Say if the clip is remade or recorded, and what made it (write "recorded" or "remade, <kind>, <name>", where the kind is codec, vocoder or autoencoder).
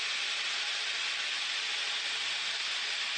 recorded